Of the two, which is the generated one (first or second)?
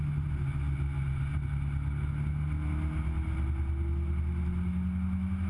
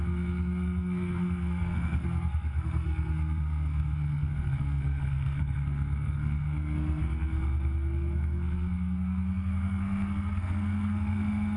second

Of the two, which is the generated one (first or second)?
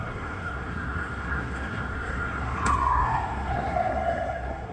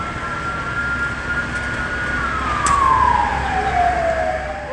first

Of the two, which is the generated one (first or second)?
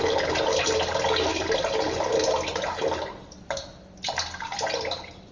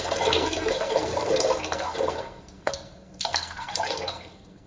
second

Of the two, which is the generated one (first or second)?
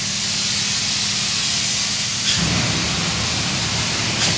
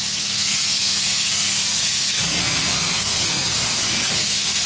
second